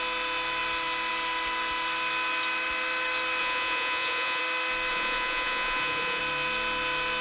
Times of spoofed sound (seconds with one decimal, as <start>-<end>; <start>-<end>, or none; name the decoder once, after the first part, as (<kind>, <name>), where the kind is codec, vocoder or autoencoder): 3.4-4.4 (vocoder, Vocos); 4.9-6.2